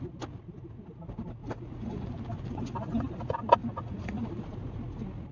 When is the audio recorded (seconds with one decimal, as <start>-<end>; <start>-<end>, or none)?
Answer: 0.0-1.4; 2.1-3.6; 4.3-5.3